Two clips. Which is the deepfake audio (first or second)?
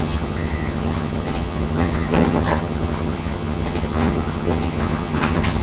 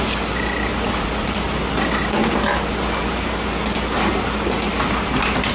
first